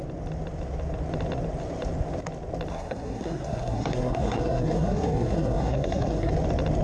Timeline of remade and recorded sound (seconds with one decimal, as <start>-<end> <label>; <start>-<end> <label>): 0.0-2.7 recorded; 2.7-6.3 remade; 6.3-6.8 recorded